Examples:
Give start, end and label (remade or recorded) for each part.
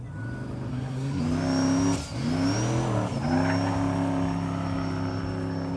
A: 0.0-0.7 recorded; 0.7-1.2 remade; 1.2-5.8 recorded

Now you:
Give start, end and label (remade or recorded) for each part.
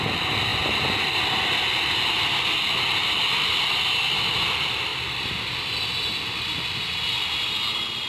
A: 0.0-8.1 recorded